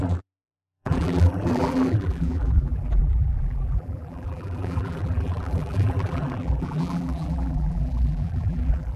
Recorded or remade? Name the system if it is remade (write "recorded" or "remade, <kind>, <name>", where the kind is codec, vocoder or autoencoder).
remade, vocoder, BigVGAN v2